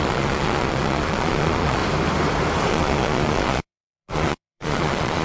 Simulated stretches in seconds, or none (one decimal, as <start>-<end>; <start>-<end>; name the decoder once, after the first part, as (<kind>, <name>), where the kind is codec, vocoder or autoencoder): 0.0-1.8 (vocoder, Vocos); 2.7-5.2